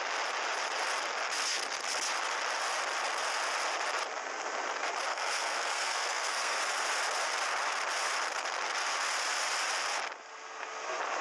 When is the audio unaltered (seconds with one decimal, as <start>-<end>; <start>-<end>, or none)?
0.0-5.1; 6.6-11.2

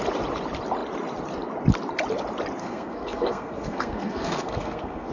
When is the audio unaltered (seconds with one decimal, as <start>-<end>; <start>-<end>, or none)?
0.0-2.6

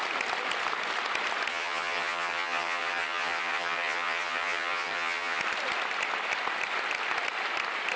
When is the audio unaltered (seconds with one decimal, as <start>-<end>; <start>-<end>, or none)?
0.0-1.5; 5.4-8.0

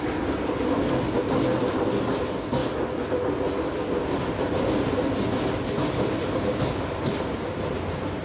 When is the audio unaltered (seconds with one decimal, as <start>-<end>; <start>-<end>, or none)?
0.0-8.2

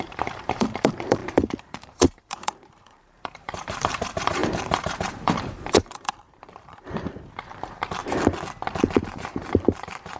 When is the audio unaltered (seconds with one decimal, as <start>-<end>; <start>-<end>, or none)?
8.0-9.0

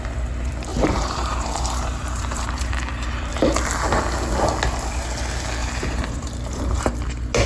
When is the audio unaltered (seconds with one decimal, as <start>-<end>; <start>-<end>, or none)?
0.0-0.7; 3.3-5.6; 6.8-7.5

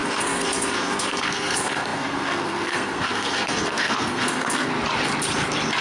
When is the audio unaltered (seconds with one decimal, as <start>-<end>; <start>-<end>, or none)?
4.7-5.8

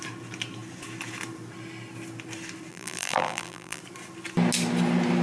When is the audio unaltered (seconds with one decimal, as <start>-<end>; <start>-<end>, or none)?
0.0-2.7; 3.8-5.2